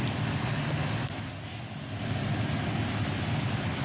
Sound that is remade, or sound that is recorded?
recorded